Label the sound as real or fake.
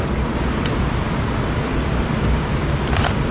fake